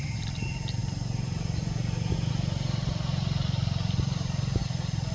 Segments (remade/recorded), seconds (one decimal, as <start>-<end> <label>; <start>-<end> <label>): 0.0-0.8 remade; 0.8-2.3 recorded; 2.3-5.1 remade